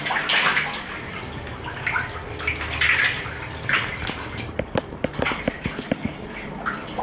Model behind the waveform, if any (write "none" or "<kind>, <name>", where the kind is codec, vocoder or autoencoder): none